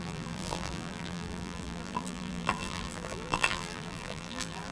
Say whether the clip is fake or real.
fake